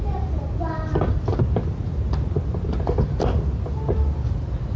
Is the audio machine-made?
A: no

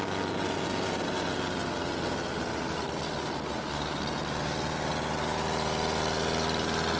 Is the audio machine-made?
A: no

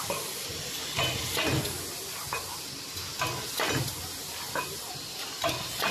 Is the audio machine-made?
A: no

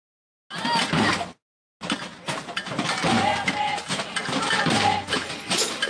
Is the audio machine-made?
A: no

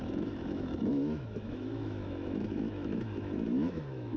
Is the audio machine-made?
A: yes